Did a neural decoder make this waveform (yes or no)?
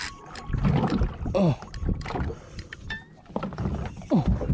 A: no